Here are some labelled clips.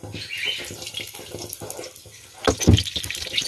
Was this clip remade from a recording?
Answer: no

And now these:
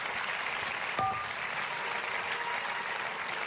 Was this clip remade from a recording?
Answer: no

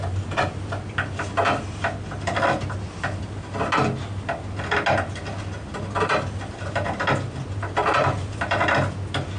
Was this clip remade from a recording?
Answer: no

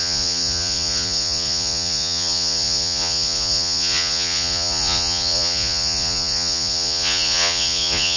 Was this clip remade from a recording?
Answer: yes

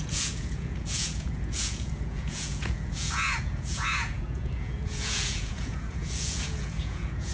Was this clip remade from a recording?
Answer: yes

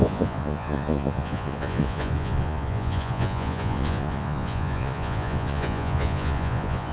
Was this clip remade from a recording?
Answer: yes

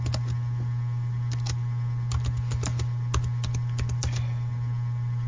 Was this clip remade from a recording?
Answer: no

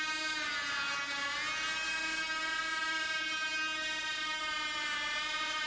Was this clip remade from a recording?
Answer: no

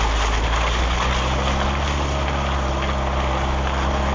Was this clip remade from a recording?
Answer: no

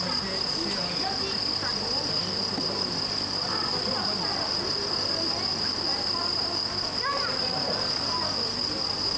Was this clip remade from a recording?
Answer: no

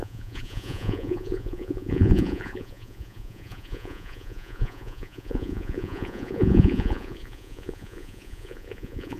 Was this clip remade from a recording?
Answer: yes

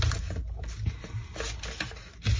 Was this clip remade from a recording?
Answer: no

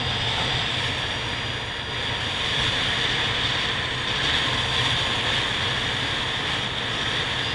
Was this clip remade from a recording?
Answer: no